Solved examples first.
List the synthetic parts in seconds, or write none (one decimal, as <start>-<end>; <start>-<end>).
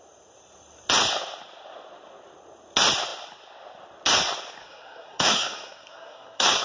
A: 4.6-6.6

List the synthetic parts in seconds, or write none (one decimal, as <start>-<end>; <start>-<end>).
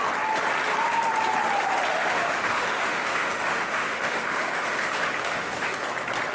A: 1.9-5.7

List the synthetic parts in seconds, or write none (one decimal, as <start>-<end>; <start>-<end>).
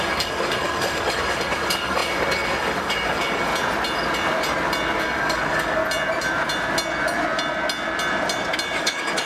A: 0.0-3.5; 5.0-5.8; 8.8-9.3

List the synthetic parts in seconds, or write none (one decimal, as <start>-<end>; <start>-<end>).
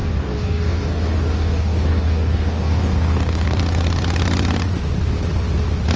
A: 0.0-3.6